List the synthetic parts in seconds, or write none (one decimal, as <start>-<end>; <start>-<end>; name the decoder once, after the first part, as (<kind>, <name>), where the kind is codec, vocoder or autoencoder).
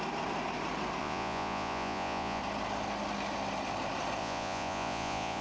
1.0-2.4 (vocoder, Vocos); 4.2-5.4